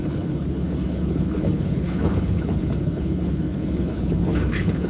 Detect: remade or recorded remade